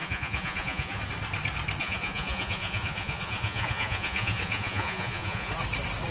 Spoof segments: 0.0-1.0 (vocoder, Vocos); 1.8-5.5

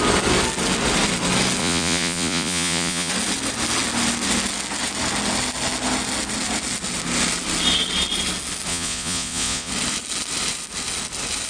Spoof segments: 1.6-3.1 (vocoder, Vocos); 8.7-9.7

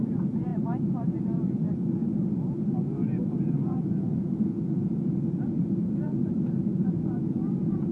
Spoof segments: 0.0-7.9 (vocoder, Vocos)

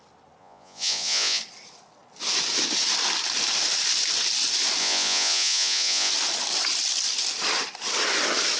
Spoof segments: 0.4-1.4 (vocoder, Vocos); 4.8-6.1

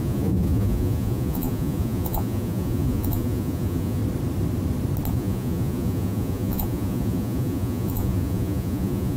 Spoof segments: 0.0-4.0 (vocoder, Vocos); 5.1-9.2